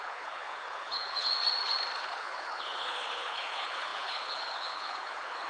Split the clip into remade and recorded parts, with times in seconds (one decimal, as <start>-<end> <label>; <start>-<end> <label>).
0.0-1.3 remade; 1.3-2.0 recorded; 2.0-5.5 remade